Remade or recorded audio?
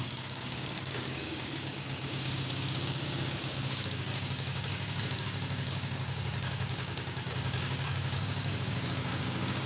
remade